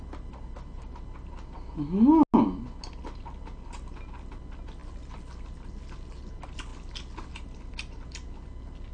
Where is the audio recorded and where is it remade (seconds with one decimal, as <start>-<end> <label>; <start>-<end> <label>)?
0.0-8.9 recorded